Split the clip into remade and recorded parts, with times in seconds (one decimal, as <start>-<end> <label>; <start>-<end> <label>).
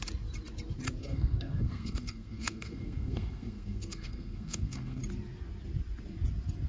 0.0-1.0 recorded; 1.0-5.0 remade; 5.0-6.7 recorded